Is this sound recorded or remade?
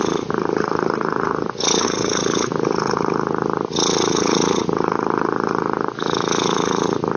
recorded